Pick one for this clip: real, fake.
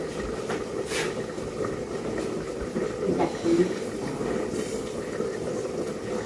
real